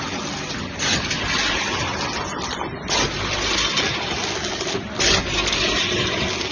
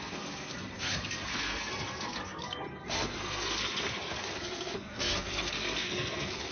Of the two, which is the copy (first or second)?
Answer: second